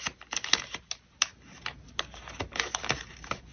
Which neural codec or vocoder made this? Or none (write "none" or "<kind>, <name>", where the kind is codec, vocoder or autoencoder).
none